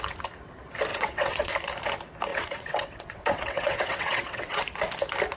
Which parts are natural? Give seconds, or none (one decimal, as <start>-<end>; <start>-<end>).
0.0-0.9; 1.5-2.3; 4.6-5.4